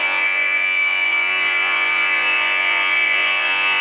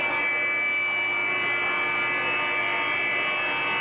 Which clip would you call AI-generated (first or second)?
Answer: first